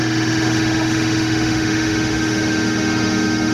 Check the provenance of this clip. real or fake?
fake